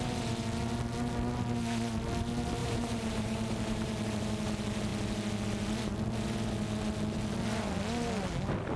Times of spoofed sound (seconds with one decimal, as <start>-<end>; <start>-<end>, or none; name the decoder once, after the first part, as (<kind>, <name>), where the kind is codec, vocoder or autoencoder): 2.6-3.9 (vocoder, BigVGAN v2)